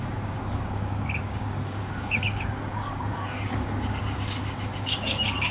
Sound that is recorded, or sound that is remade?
remade